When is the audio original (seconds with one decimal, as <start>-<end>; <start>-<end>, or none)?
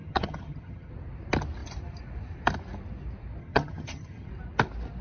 0.9-3.4; 4.3-5.0